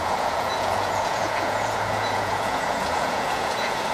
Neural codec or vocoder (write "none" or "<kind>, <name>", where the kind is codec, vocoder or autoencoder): vocoder, Vocos